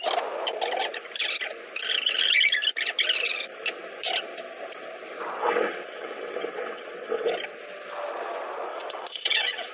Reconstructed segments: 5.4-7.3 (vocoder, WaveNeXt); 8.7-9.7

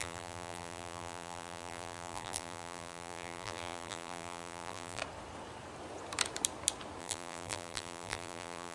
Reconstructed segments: 0.0-5.0 (vocoder, BigVGAN v2); 7.0-8.7